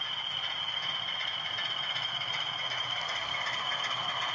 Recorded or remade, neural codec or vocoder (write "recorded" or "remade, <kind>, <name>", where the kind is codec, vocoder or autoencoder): recorded